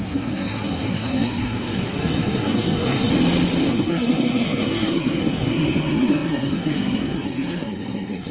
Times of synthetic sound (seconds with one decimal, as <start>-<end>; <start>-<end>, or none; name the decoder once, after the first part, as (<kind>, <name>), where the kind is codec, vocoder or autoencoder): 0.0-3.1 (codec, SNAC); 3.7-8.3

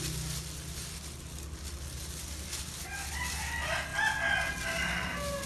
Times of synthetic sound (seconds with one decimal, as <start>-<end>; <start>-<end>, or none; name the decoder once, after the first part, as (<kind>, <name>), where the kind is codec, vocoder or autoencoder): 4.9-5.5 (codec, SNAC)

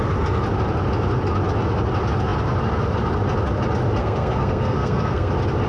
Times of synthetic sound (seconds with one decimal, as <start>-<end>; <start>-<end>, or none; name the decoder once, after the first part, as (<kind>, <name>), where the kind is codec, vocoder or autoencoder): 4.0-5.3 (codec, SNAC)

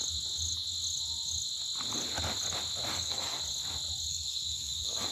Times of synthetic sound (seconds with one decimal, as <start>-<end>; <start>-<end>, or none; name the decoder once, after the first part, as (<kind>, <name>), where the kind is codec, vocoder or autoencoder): 2.9-3.4 (codec, SNAC); 4.1-5.1